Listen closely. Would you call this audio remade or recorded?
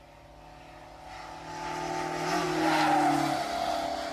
recorded